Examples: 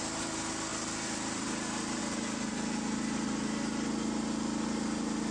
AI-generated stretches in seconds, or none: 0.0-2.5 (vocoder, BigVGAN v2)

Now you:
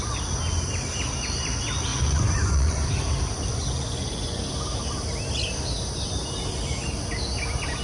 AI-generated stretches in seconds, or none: 1.9-2.9 (vocoder, Vocos); 3.5-4.4

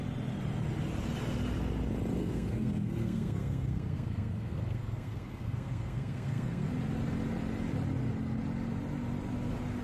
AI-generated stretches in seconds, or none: 2.2-6.7 (codec, SNAC)